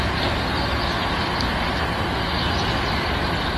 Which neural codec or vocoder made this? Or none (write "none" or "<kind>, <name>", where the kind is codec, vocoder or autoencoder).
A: none